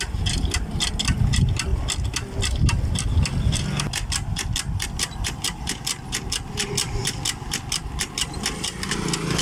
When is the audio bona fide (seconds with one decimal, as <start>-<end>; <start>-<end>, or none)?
0.0-9.4